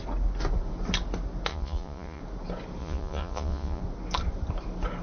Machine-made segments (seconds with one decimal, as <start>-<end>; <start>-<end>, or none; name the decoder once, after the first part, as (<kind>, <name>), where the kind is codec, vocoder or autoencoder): 1.5-2.2 (vocoder, Vocos); 2.8-3.8

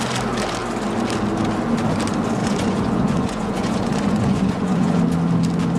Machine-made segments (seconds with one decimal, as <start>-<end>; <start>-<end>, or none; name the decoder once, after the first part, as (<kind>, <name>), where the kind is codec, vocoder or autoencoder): 2.4-5.0 (vocoder, Vocos)

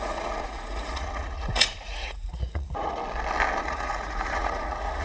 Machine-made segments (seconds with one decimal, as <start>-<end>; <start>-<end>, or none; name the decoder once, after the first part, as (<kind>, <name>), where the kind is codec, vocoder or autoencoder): 0.0-3.0 (vocoder, Vocos); 3.6-5.0

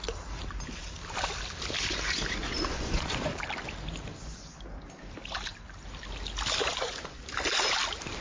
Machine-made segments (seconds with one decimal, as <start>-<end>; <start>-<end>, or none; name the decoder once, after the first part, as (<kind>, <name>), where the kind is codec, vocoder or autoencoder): 2.4-3.3 (vocoder, Vocos); 4.1-4.6; 6.6-7.2

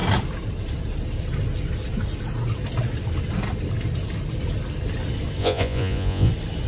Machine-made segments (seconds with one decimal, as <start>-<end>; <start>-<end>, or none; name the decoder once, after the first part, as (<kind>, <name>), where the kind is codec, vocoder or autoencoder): 5.4-6.3 (vocoder, Vocos)

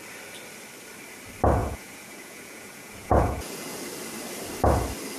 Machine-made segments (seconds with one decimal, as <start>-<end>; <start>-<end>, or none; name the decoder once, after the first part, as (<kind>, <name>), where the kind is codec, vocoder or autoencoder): 1.6-3.8 (vocoder, Vocos)

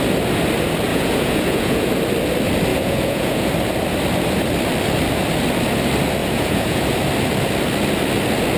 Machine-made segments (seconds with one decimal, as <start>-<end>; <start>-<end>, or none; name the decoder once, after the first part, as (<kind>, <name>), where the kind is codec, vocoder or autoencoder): 0.9-1.9 (vocoder, Vocos); 2.7-3.5; 6.2-6.8